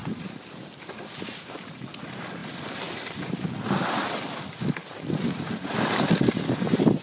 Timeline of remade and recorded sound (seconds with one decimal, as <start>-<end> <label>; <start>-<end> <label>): 0.0-1.0 remade; 1.0-2.4 recorded; 2.4-4.0 remade; 4.0-4.8 recorded; 4.8-7.0 remade

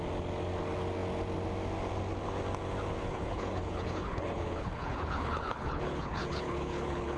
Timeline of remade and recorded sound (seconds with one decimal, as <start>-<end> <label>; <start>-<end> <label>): 0.0-3.0 recorded; 3.0-7.2 remade

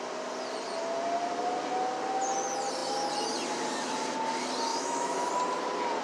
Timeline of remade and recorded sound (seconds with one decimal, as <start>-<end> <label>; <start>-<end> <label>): 0.0-4.7 recorded; 4.7-5.3 remade; 5.3-6.0 recorded

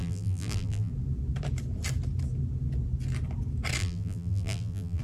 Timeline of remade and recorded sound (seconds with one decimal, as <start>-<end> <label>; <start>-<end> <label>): 0.0-0.9 remade; 0.9-3.8 recorded; 3.8-5.0 remade

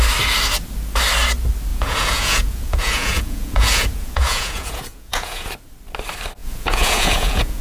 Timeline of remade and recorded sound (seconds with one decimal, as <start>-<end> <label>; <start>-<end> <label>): 0.0-1.7 recorded; 1.7-5.5 remade; 5.5-6.4 recorded; 6.4-7.6 remade

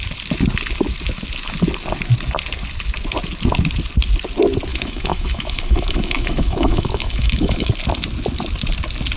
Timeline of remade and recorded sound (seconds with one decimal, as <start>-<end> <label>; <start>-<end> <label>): 0.0-4.7 recorded; 4.7-7.7 remade; 7.7-9.2 recorded